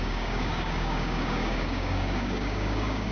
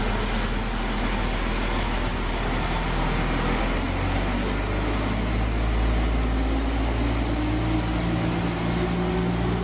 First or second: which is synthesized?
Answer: first